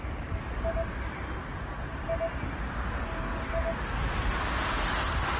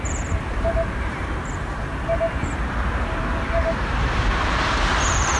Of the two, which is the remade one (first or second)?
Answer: second